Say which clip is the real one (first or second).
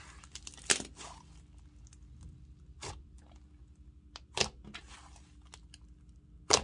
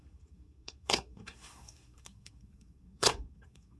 first